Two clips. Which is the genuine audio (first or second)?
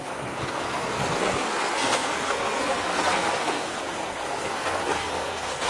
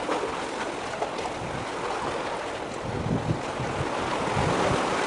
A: second